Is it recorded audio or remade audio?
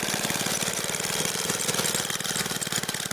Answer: recorded